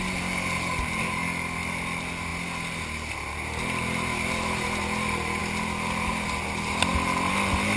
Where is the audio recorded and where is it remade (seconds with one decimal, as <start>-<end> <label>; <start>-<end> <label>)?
0.0-7.8 recorded